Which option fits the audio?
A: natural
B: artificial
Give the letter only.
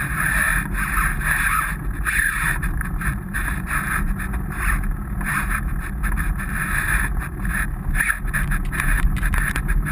B